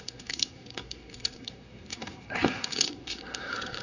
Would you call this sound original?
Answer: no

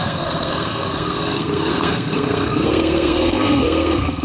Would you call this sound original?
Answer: no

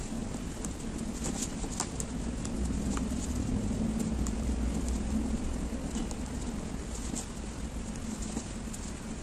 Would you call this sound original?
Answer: yes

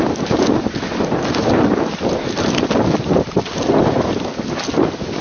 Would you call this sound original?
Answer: yes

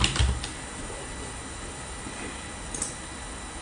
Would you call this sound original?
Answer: yes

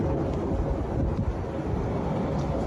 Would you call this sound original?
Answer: yes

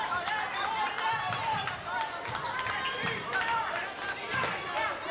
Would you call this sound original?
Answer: yes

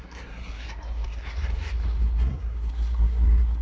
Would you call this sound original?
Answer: no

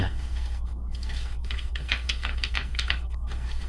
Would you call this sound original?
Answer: no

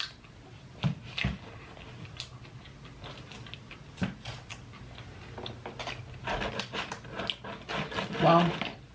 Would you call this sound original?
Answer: yes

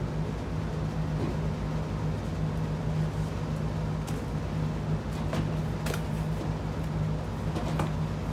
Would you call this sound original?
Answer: yes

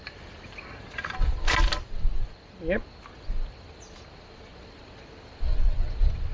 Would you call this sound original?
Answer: yes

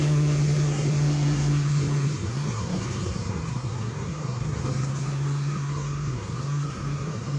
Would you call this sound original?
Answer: no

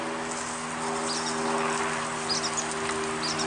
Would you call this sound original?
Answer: yes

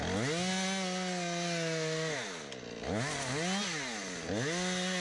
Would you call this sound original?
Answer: yes